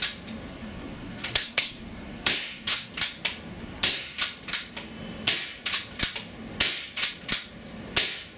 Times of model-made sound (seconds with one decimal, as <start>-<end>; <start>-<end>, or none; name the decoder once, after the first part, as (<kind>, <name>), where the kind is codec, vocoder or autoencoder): 0.5-2.9 (codec, SNAC); 3.5-4.2